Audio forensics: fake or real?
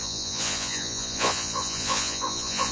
fake